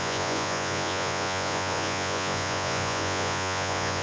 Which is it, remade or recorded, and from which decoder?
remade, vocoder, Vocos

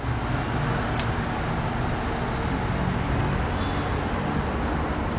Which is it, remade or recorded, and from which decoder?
recorded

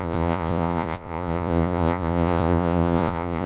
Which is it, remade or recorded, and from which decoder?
remade, vocoder, Vocos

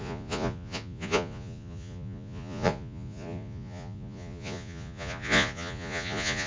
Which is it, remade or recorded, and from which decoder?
remade, vocoder, Vocos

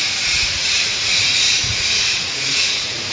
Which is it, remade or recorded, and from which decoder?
remade, vocoder, Vocos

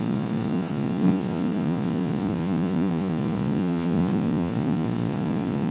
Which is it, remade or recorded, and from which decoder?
remade, vocoder, Vocos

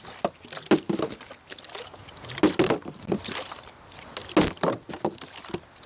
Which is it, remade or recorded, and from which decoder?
recorded